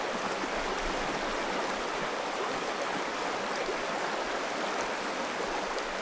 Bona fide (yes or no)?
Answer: yes